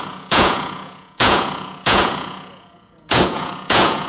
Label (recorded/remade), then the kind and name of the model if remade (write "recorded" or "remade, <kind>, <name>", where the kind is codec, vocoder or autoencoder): remade, vocoder, Vocos